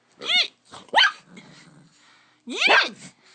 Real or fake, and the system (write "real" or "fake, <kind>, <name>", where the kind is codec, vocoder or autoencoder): real